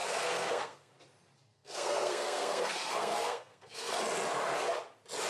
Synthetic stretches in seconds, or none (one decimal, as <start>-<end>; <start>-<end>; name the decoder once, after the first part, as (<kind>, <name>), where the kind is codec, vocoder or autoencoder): 0.0-0.9 (codec, SNAC); 1.5-4.0

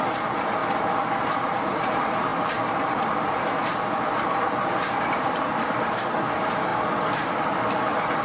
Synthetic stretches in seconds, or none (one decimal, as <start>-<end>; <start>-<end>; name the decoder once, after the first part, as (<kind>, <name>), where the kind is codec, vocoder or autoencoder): 0.0-0.6 (vocoder, BigVGAN v2); 1.2-6.7

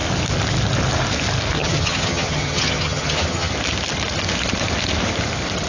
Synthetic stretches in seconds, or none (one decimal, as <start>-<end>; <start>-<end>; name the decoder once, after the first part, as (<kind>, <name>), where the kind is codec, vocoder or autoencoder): 1.6-3.5 (vocoder, HiFi-GAN)

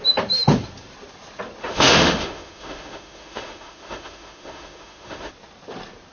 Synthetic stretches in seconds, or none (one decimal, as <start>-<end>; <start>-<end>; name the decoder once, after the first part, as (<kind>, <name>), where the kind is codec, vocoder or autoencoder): 1.6-5.3 (autoencoder, DAC-VAE)

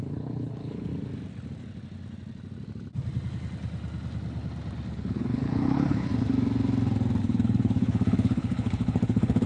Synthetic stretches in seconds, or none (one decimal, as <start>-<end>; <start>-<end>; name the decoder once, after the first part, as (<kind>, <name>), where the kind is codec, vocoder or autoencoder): 0.0-0.9 (codec, HILCodec); 4.9-6.1; 7.2-9.5